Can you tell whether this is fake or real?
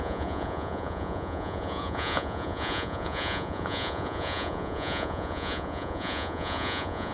fake